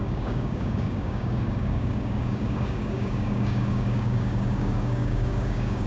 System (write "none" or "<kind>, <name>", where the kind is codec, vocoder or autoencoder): codec, DAC